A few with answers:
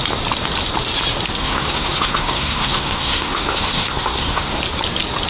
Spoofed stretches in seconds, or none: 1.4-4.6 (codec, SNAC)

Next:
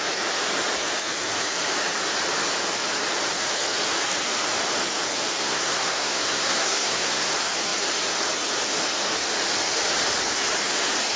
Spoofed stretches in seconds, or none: 5.4-7.3 (codec, SNAC)

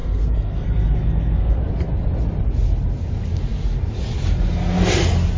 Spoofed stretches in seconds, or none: 0.0-1.6 (codec, SNAC)

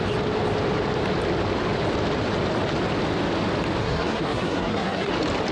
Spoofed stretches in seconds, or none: 3.8-5.1 (codec, SNAC)

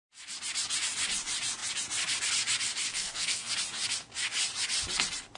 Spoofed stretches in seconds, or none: 2.9-3.5 (codec, SNAC)